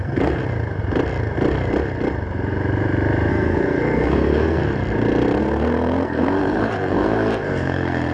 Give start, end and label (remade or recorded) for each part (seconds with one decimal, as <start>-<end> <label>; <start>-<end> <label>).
0.0-0.4 remade; 0.4-3.3 recorded; 3.3-4.6 remade; 4.6-5.4 recorded; 5.4-8.1 remade